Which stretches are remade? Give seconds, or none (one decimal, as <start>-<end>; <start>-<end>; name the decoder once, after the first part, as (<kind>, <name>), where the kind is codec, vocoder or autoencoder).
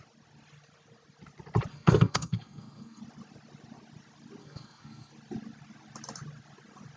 1.7-3.0 (codec, SNAC); 4.4-5.1